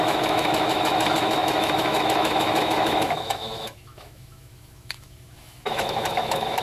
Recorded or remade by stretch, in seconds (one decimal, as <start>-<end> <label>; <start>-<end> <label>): 0.0-6.6 remade

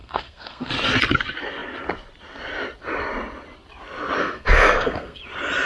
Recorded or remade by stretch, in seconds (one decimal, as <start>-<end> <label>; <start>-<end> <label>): 0.0-0.7 remade; 0.7-4.2 recorded; 4.2-5.2 remade; 5.2-5.7 recorded

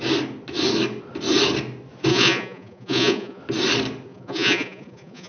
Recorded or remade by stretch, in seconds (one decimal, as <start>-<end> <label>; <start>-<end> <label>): 0.0-2.1 recorded; 2.1-3.4 remade; 3.4-4.1 recorded; 4.1-5.3 remade

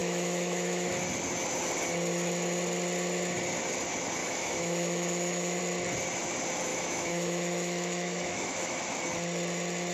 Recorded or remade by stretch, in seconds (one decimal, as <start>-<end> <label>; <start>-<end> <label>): 0.0-0.9 remade; 0.9-4.2 recorded; 4.2-5.6 remade; 5.6-6.7 recorded; 6.7-8.8 remade; 8.8-9.9 recorded

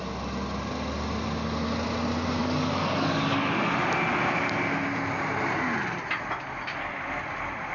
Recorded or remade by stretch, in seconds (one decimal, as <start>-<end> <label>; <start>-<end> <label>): 0.0-2.4 recorded; 2.4-3.6 remade; 3.6-7.7 recorded

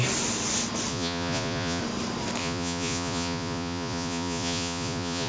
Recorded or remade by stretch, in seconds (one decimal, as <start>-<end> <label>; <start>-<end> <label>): 0.0-0.9 recorded; 0.9-1.8 remade; 1.8-2.4 recorded; 2.4-5.3 remade